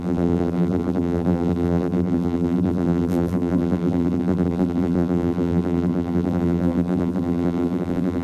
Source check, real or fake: fake